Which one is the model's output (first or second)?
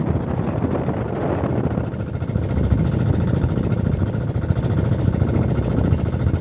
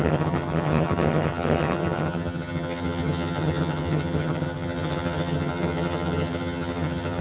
second